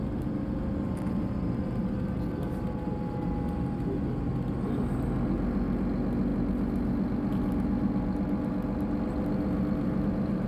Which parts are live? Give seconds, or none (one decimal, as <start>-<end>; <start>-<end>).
0.0-10.5